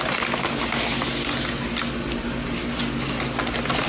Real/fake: real